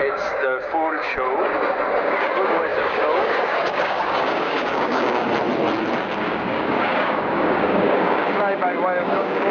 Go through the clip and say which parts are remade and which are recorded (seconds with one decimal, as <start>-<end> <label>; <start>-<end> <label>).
0.0-1.1 remade; 1.1-2.0 recorded; 2.0-5.2 remade; 5.2-6.2 recorded; 6.2-9.5 remade